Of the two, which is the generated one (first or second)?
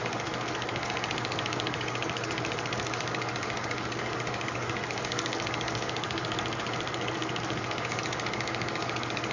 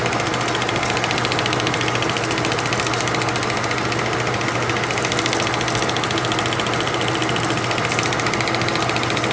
first